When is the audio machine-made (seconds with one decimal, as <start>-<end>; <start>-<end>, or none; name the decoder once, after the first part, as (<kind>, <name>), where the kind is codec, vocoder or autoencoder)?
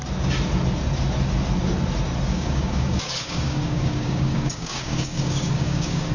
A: 2.3-6.1 (codec, DAC)